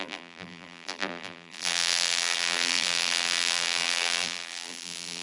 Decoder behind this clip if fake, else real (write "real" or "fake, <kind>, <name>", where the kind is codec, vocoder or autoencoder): fake, vocoder, BigVGAN v2